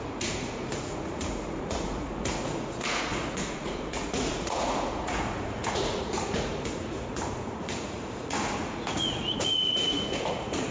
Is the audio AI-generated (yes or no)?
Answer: yes